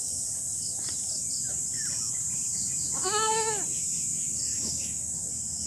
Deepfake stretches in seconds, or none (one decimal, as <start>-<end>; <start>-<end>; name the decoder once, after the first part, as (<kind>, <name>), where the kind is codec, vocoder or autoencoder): 4.5-5.3 (autoencoder, DAC-VAE)